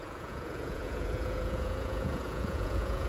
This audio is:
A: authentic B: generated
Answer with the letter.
B